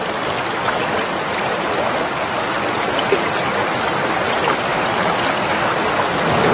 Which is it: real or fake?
real